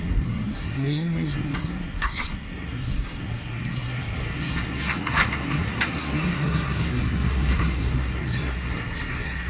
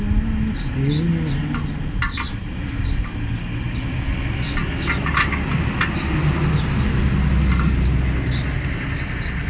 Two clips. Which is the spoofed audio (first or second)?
first